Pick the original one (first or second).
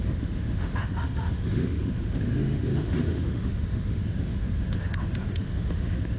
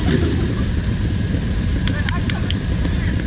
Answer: second